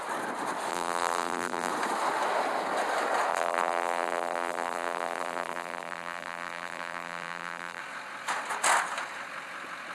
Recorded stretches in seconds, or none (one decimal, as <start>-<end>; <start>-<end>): 0.0-0.7; 1.7-3.3; 7.8-9.9